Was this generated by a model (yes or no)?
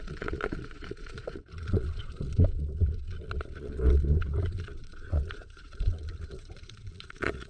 yes